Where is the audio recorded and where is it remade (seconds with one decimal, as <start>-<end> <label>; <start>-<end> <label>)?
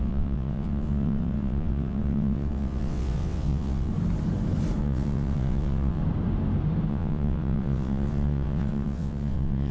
0.0-3.9 remade; 3.9-4.8 recorded; 4.8-6.0 remade; 6.0-6.9 recorded; 6.9-9.7 remade